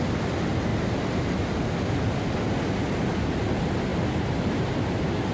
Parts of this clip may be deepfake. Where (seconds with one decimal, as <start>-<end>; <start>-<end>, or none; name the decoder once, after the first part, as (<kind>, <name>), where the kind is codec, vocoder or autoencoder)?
0.7-1.6 (vocoder, BigVGAN v2); 3.9-5.3